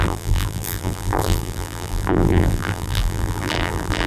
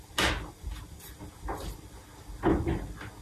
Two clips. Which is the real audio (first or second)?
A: second